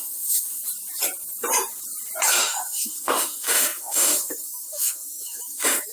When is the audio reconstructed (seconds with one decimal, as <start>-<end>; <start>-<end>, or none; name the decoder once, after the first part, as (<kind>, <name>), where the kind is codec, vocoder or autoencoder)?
0.0-0.6 (autoencoder, DAC-VAE); 2.4-5.9